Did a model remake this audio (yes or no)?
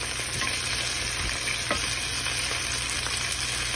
no